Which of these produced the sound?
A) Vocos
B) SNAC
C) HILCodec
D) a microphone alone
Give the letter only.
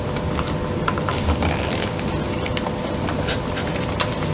D